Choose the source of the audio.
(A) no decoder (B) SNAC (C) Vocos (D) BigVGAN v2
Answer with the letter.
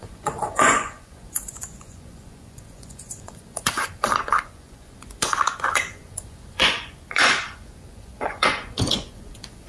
C